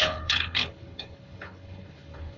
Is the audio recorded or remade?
remade